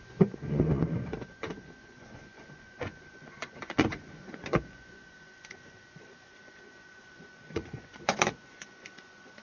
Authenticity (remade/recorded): remade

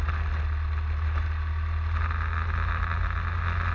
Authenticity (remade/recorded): recorded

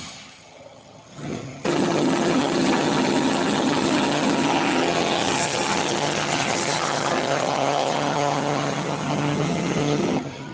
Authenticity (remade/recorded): remade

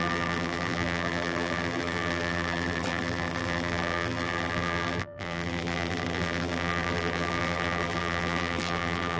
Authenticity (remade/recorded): remade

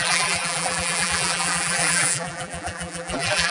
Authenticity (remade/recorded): remade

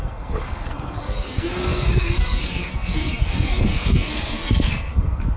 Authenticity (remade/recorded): remade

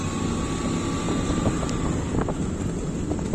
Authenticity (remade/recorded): recorded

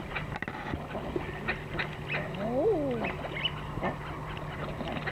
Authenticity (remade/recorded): recorded